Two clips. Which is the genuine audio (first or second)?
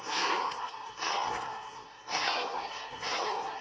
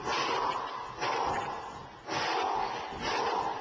second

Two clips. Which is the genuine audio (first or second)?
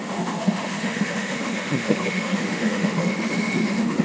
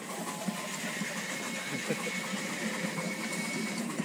second